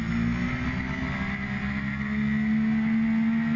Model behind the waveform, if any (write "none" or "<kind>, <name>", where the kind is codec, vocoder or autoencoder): none